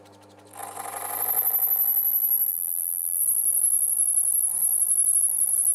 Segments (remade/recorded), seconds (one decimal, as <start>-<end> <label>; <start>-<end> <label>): 0.0-2.5 recorded; 2.5-3.2 remade; 3.2-5.7 recorded